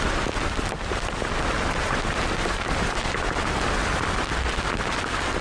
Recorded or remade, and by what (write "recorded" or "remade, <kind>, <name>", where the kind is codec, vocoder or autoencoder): recorded